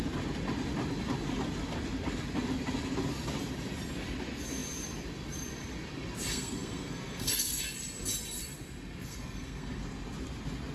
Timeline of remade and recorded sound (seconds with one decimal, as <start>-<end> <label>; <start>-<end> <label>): 0.0-6.3 recorded; 6.3-7.6 remade; 7.6-9.1 recorded; 9.1-9.8 remade; 9.8-10.7 recorded